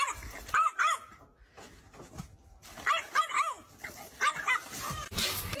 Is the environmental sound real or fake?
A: real